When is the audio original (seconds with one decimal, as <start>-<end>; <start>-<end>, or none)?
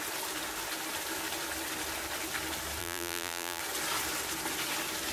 0.0-2.8; 3.6-5.1